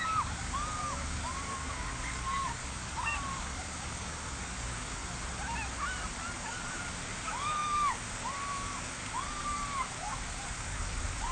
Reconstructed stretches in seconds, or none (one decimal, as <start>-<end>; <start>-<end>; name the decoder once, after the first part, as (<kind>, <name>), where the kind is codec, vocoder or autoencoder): 0.0-5.0 (codec, DAC); 6.4-11.3